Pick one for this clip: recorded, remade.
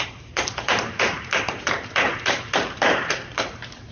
remade